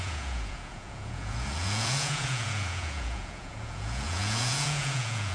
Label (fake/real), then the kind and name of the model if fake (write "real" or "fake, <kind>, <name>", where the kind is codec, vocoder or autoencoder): fake, vocoder, Vocos